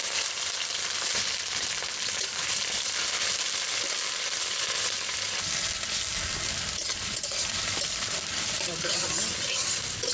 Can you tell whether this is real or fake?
fake